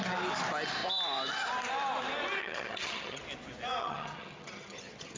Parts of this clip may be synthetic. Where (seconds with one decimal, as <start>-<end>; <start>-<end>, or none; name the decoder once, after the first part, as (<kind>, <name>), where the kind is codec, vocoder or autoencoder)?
2.4-3.2 (vocoder, HiFi-GAN); 3.8-5.2